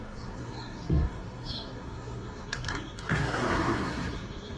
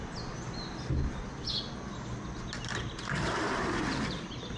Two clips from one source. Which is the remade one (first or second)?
first